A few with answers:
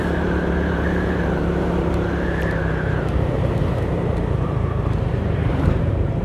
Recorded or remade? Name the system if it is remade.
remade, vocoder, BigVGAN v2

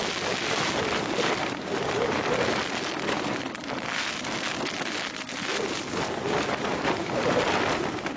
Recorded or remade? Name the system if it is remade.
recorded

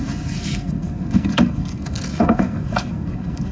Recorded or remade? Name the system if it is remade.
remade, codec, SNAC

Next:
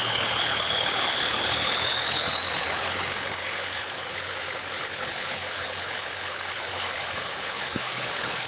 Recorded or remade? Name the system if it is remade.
remade, codec, HILCodec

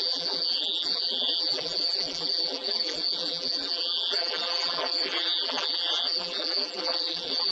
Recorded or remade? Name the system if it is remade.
remade, vocoder, BigVGAN v2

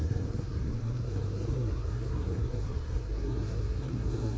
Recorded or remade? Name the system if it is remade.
remade, codec, SNAC